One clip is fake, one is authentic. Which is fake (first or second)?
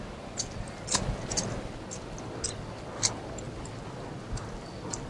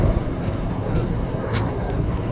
second